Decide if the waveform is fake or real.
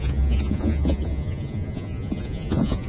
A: fake